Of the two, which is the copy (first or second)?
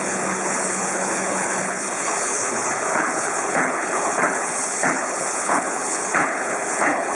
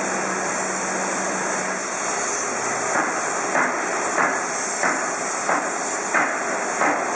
first